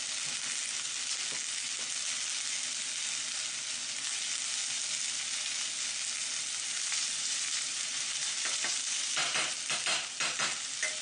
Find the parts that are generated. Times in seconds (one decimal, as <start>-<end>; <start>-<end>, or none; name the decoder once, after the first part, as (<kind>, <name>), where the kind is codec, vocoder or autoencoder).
6.7-9.5 (vocoder, BigVGAN v2)